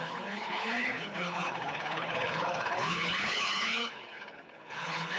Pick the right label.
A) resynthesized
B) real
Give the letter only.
A